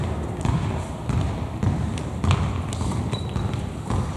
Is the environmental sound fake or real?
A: real